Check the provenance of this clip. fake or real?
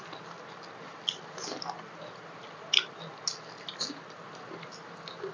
real